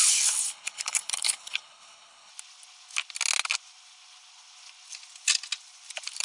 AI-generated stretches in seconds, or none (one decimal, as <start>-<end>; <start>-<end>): 0.0-2.3